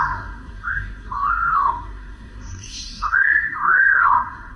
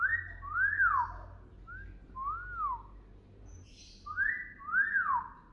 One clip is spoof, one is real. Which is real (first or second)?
second